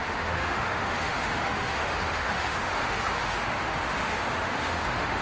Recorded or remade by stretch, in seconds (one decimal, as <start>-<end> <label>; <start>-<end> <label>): 0.0-5.2 remade